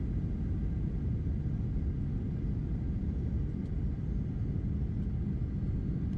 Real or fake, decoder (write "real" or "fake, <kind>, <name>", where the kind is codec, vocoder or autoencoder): fake, vocoder, BigVGAN v2